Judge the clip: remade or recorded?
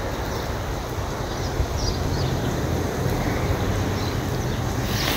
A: recorded